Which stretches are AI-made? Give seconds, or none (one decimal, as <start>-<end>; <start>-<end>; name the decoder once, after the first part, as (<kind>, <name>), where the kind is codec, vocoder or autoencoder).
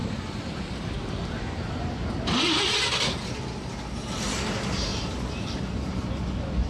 none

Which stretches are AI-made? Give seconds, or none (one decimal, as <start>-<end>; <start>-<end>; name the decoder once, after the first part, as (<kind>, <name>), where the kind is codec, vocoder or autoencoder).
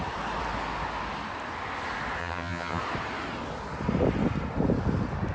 2.2-2.8 (vocoder, HiFi-GAN)